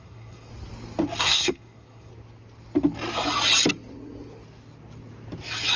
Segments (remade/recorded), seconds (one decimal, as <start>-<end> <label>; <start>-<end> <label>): 0.0-0.5 remade; 0.5-1.2 recorded; 1.2-2.1 remade; 2.1-5.8 recorded